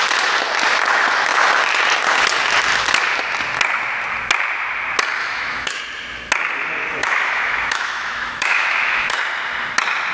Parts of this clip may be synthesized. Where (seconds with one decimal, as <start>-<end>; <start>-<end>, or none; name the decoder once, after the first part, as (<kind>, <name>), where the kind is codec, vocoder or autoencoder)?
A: 5.2-5.8 (autoencoder, DAC-VAE); 7.0-9.2